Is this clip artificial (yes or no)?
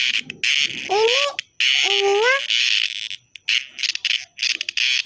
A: no